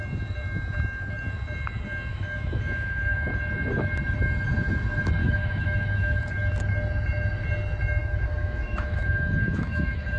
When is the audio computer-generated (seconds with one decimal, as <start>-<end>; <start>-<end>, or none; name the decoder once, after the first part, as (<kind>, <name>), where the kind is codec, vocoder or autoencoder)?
2.1-3.3 (autoencoder, DAC-VAE); 5.2-6.2; 8.0-10.2